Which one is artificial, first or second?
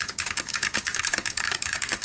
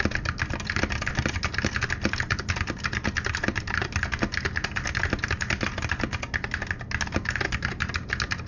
first